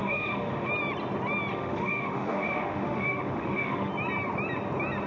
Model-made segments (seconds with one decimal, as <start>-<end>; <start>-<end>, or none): 0.0-0.7; 1.5-3.9